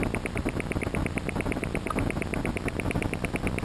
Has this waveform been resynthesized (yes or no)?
no